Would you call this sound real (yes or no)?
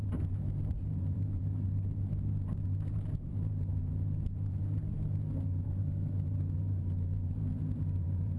no